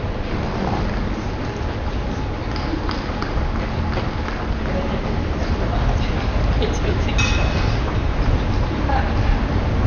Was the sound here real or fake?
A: real